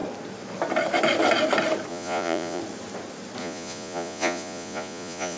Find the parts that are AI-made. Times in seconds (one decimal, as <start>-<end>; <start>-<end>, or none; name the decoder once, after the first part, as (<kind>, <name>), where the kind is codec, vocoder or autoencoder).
1.9-2.6 (vocoder, Vocos); 3.4-5.4